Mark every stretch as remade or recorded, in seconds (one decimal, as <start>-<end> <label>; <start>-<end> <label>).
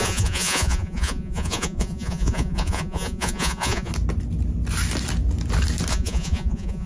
0.0-3.9 remade; 3.9-5.9 recorded; 5.9-6.9 remade